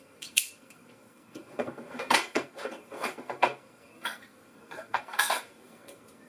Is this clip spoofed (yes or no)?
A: yes